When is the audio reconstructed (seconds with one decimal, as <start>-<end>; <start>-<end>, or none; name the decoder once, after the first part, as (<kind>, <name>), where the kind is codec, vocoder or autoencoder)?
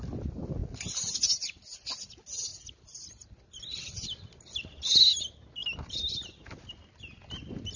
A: none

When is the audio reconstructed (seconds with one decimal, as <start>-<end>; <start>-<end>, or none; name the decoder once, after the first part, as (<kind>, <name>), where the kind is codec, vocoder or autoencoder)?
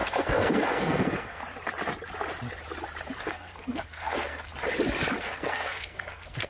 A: 0.0-1.4 (codec, SNAC); 3.2-4.5; 5.2-6.5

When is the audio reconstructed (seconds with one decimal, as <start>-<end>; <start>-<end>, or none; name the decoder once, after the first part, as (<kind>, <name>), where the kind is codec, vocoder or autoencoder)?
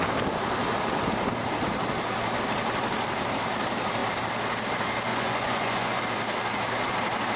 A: 5.1-6.0 (vocoder, Vocos)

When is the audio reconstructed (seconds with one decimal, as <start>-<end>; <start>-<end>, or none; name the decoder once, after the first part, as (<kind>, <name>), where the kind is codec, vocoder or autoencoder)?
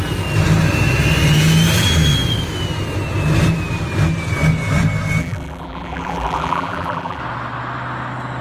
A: 5.2-7.2 (vocoder, BigVGAN v2)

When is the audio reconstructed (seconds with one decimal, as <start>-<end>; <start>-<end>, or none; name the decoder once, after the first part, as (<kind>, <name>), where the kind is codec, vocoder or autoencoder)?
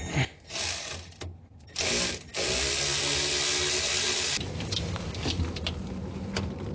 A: none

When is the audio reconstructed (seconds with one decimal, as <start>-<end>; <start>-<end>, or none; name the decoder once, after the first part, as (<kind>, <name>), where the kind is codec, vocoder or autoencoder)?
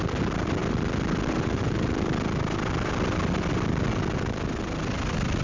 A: none